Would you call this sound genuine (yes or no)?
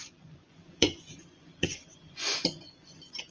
no